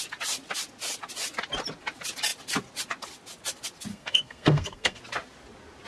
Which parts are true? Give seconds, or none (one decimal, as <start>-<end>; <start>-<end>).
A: 0.0-3.9; 5.0-5.9